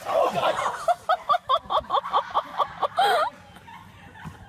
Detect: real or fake real